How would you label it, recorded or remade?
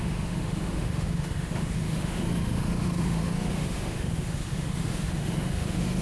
remade